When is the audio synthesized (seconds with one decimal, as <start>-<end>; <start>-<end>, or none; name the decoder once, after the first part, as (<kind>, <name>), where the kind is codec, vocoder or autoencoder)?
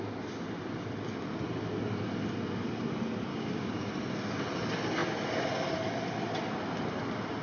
3.3-3.9 (codec, DAC)